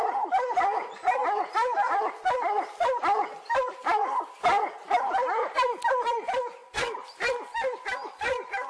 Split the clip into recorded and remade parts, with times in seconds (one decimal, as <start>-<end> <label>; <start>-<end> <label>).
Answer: 0.0-8.7 recorded